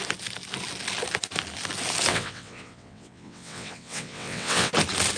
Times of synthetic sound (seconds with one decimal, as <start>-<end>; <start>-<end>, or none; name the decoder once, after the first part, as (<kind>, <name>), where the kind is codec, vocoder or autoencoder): 2.1-4.7 (vocoder, WaveNeXt)